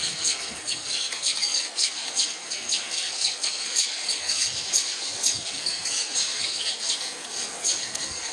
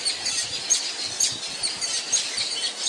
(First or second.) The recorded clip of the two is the second